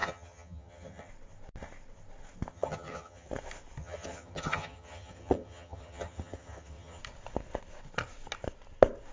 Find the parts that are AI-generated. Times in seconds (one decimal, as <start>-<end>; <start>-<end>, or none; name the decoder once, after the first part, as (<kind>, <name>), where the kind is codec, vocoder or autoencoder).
0.0-1.1 (vocoder, HiFi-GAN); 2.5-3.3; 3.8-7.0